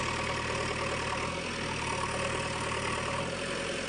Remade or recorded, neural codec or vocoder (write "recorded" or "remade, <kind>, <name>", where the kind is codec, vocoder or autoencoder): recorded